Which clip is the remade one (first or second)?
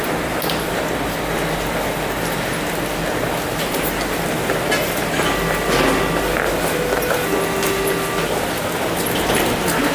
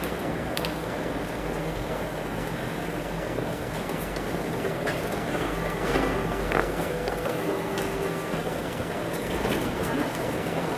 second